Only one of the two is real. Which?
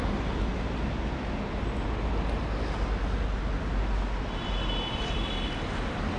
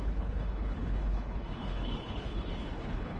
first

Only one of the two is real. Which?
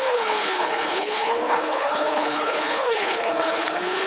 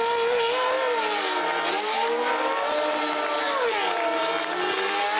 second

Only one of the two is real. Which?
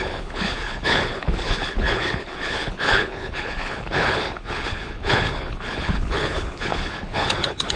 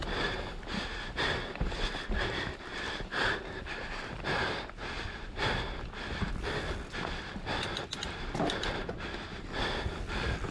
second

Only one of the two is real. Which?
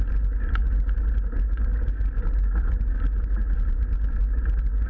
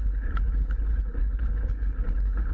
first